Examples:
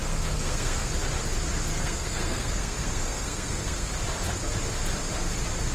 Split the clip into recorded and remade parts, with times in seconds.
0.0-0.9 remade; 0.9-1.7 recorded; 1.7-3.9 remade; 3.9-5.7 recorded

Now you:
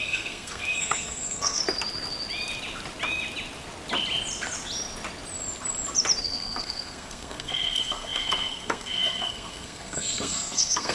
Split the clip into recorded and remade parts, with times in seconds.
0.0-1.6 remade; 1.6-6.2 recorded; 6.2-10.9 remade

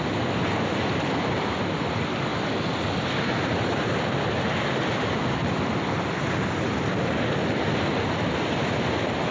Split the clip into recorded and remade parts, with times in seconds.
0.0-9.3 recorded

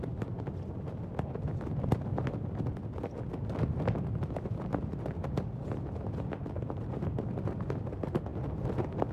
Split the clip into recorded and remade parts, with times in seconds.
0.0-8.3 recorded; 8.3-9.1 remade

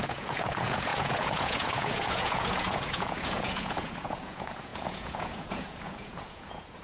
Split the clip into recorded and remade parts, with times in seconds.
0.0-6.8 remade

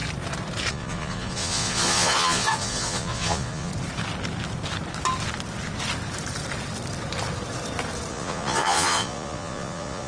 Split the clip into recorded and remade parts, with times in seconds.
0.0-0.7 recorded; 0.7-3.7 remade; 3.7-8.1 recorded; 8.1-10.1 remade